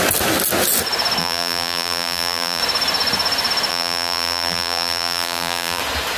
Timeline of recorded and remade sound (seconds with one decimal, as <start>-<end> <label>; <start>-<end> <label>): 0.0-1.2 recorded; 1.2-2.6 remade; 2.6-3.7 recorded; 3.7-5.8 remade; 5.8-6.2 recorded